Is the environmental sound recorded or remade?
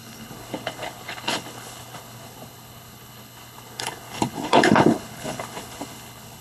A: remade